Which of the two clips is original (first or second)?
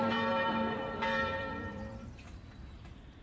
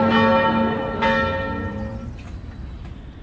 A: second